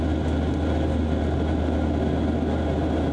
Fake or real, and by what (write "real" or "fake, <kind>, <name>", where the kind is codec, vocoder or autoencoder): real